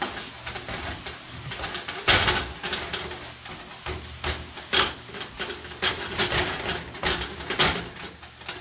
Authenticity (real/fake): real